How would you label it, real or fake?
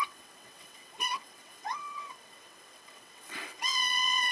fake